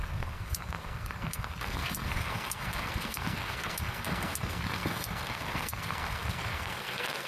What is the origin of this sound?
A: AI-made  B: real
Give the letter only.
A